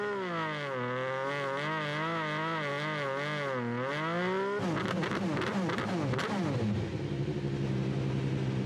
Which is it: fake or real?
real